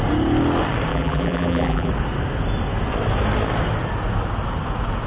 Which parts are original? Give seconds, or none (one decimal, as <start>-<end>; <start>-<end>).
0.0-0.9; 1.9-5.1